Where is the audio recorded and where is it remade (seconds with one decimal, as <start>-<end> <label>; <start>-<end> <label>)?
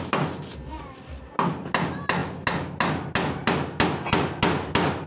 0.0-5.1 recorded